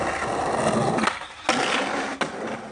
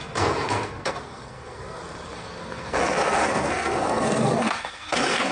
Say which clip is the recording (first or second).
first